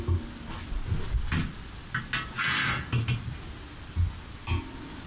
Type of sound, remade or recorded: recorded